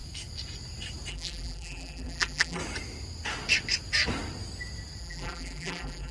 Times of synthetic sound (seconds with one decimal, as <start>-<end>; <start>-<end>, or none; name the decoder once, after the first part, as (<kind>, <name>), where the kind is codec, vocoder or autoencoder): 1.1-2.6 (vocoder, BigVGAN v2); 5.0-6.1